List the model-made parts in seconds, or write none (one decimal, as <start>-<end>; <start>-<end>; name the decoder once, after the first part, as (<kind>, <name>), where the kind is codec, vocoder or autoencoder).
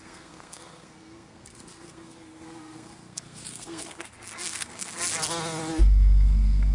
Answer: 0.0-5.0 (codec, SNAC); 5.8-6.7